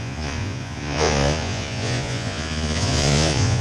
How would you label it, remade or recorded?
remade